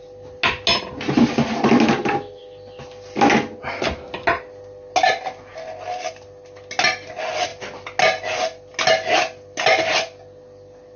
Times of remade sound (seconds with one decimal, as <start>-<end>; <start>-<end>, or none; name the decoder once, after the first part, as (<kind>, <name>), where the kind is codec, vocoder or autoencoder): none